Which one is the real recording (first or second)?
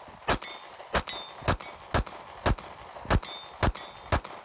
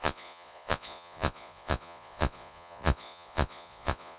first